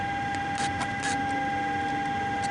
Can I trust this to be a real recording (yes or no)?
yes